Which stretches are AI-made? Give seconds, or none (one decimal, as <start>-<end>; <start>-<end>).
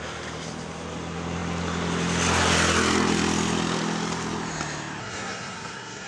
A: 5.0-6.1